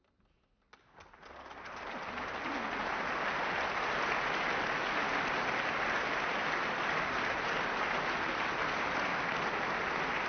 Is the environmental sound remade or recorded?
recorded